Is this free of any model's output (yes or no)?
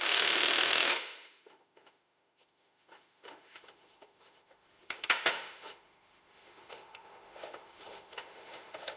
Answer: no